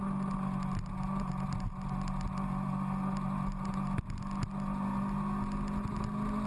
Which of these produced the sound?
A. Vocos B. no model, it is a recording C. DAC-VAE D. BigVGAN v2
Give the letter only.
B